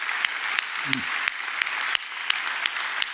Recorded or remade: recorded